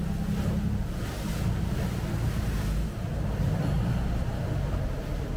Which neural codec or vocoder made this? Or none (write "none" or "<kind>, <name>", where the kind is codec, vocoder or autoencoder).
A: none